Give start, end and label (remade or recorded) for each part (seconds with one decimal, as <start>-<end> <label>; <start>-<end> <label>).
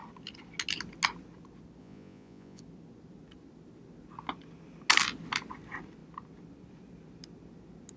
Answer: 0.0-1.8 recorded; 1.8-2.6 remade; 2.6-8.0 recorded